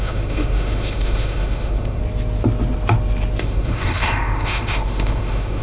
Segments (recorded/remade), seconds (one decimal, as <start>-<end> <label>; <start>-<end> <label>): 0.0-2.0 remade; 2.0-3.4 recorded; 3.4-5.6 remade